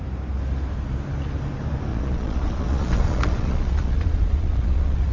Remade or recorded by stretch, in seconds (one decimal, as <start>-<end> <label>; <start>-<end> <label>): 0.0-1.9 recorded; 1.9-5.1 remade